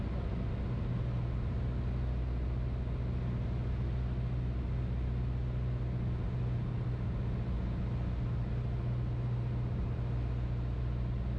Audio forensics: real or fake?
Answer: real